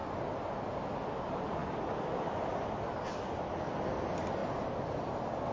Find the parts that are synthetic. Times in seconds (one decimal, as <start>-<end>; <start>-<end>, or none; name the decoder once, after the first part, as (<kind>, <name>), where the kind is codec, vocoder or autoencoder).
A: 0.0-0.8 (vocoder, BigVGAN v2); 1.6-3.7; 4.4-5.1